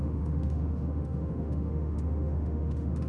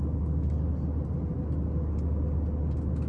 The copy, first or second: first